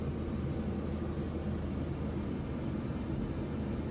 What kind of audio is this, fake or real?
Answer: real